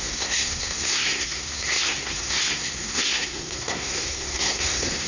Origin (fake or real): fake